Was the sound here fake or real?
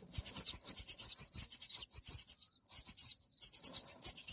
real